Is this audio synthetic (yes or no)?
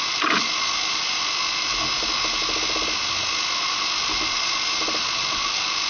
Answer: no